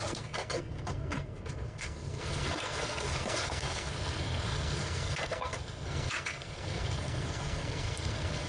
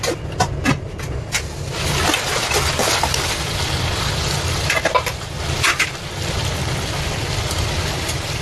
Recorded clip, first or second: second